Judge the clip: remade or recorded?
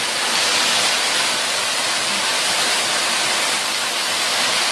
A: recorded